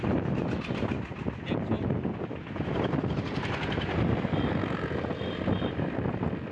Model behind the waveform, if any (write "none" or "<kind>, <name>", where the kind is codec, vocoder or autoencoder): none